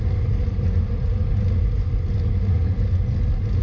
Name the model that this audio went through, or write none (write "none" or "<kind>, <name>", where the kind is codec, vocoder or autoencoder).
none